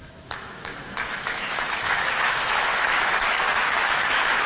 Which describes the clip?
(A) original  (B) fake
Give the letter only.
B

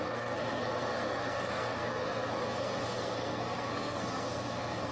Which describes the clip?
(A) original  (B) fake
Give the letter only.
B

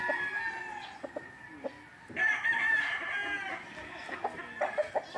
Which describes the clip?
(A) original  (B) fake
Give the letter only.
A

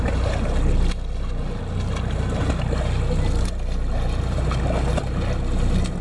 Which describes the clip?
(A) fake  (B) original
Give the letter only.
B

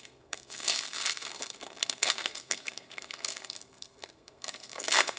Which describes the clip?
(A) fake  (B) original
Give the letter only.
A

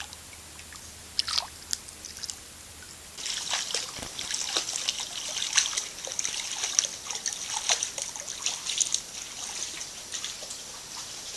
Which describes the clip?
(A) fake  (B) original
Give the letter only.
B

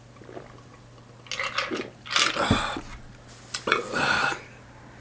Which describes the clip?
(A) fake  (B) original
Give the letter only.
B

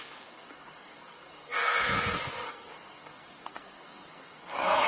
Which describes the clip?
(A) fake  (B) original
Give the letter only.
A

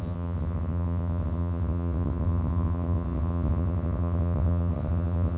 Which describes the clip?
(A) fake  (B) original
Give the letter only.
A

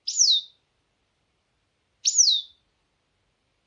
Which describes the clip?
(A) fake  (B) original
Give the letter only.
B